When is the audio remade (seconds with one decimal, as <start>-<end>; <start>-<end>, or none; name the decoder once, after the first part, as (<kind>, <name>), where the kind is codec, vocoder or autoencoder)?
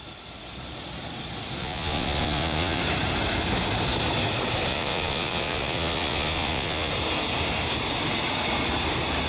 1.6-2.8 (vocoder, Vocos); 4.7-6.9